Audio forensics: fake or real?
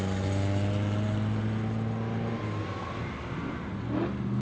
real